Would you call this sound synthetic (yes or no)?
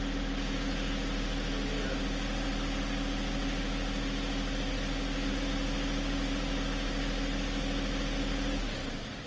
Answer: no